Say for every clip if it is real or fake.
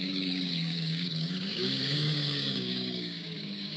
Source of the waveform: fake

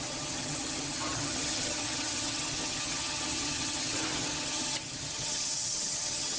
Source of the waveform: fake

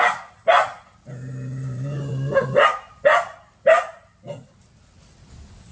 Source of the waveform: real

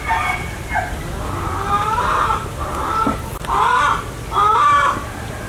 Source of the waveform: real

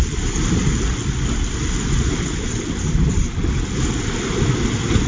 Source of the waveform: real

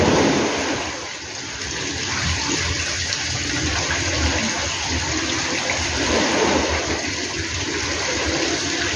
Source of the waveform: real